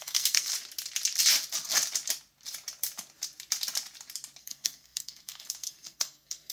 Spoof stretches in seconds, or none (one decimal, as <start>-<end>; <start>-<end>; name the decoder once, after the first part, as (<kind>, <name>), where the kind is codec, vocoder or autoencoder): 0.0-0.5 (codec, SNAC); 4.4-6.5